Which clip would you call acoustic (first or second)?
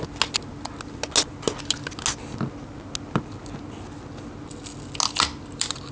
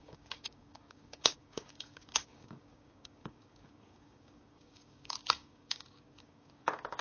first